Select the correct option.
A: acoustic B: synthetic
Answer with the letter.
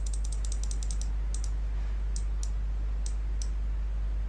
A